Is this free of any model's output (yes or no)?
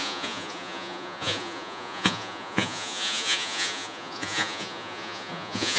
no